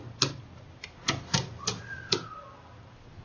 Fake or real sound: real